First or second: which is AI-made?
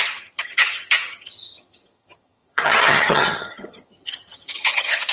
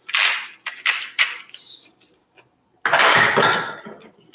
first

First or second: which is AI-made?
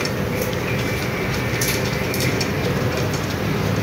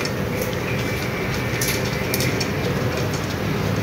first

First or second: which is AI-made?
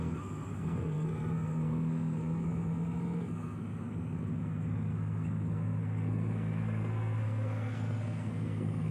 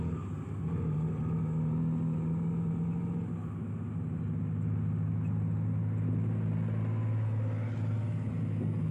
first